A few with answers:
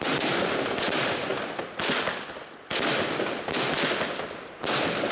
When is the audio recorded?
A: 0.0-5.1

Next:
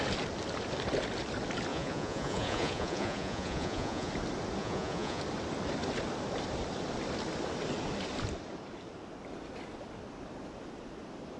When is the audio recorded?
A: 0.0-1.7; 4.1-4.6; 5.2-11.4

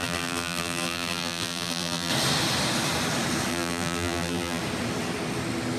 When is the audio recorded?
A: 2.1-3.5; 4.6-5.8